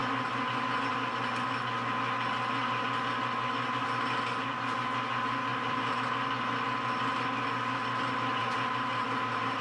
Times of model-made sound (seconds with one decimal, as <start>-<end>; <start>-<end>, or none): 5.5-6.1; 8.4-9.6